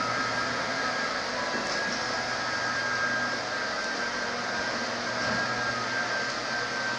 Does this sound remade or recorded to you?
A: recorded